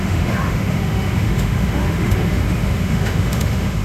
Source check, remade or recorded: remade